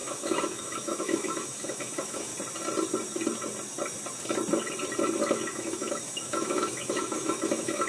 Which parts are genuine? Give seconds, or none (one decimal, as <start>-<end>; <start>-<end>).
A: 2.3-5.3